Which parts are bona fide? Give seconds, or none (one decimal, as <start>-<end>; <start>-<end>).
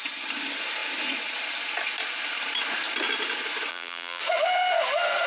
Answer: 0.0-3.7; 4.2-5.3